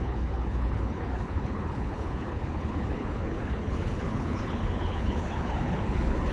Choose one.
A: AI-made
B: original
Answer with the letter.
A